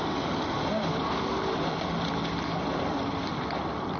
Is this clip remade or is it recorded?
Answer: recorded